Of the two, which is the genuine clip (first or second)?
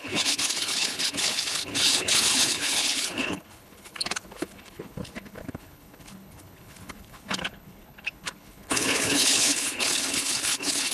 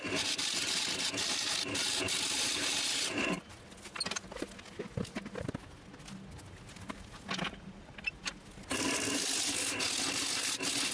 second